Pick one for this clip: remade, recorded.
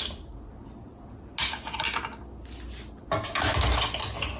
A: recorded